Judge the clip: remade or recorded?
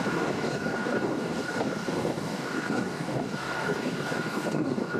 remade